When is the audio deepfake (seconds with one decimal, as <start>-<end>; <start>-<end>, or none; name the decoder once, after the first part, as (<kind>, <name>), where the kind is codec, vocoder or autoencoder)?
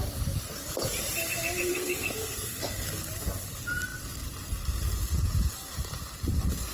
1.7-2.6 (codec, SNAC)